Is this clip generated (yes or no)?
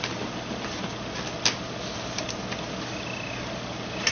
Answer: no